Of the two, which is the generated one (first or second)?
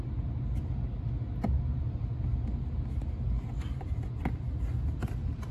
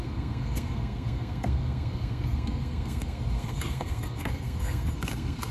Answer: second